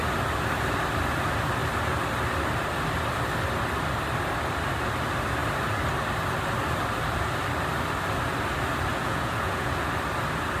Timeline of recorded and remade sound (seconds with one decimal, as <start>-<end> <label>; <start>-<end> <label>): 0.0-8.9 recorded; 8.9-9.9 remade; 9.9-10.6 recorded